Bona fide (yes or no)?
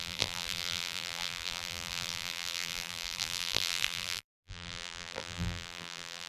no